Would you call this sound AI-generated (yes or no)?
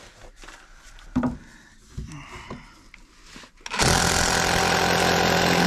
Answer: no